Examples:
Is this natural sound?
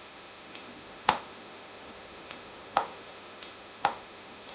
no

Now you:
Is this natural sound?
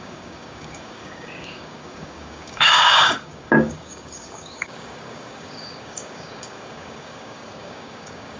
no